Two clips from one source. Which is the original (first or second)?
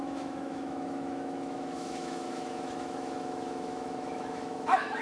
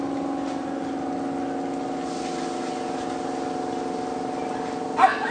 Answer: second